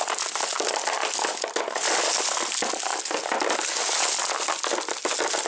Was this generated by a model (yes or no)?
no